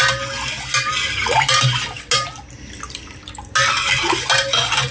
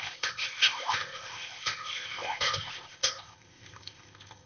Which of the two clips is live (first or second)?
first